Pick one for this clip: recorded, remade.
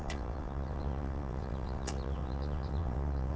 remade